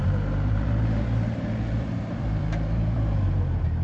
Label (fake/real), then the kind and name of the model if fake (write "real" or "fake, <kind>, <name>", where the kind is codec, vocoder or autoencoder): fake, vocoder, BigVGAN v2